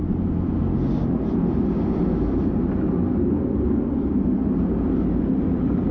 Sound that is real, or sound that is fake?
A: real